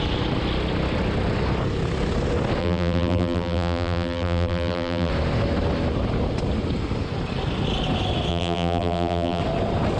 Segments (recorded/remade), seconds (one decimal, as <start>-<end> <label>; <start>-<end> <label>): 0.0-2.6 recorded; 2.6-5.1 remade; 5.1-8.3 recorded; 8.3-9.4 remade; 9.4-10.0 recorded